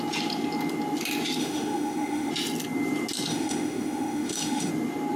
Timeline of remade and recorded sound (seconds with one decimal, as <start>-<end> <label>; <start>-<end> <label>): 0.0-1.4 recorded; 1.4-2.3 remade; 2.3-3.3 recorded; 3.3-4.7 remade; 4.7-5.2 recorded